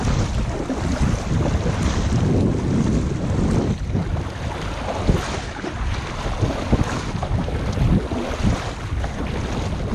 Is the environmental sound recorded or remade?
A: recorded